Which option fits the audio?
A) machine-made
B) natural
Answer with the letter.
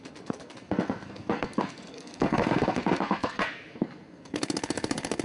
A